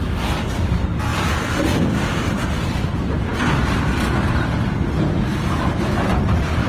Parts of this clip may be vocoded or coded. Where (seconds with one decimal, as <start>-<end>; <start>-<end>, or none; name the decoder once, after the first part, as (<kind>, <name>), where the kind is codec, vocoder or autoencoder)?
0.0-1.1 (vocoder, BigVGAN v2); 1.8-3.3; 5.6-6.7